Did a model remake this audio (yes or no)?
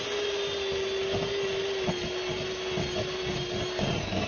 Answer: no